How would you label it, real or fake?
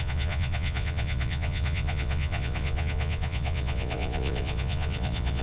fake